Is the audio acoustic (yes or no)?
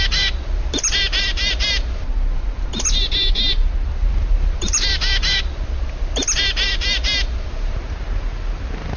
yes